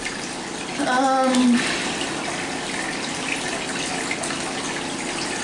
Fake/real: real